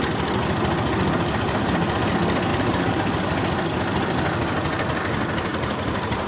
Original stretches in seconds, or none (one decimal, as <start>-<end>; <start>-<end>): 0.0-2.5; 3.2-5.5